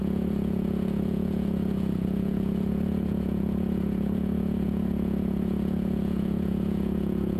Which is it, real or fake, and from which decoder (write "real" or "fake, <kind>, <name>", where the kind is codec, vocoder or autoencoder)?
fake, vocoder, Vocos